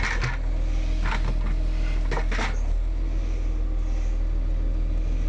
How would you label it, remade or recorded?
recorded